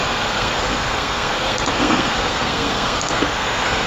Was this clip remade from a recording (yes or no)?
yes